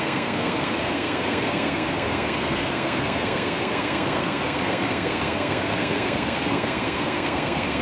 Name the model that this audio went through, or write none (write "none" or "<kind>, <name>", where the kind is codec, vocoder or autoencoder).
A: codec, SNAC